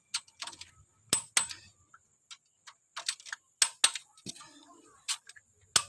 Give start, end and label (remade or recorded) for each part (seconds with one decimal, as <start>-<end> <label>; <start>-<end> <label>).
0.0-4.0 recorded; 4.0-5.2 remade; 5.2-5.9 recorded